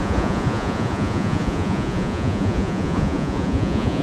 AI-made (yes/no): yes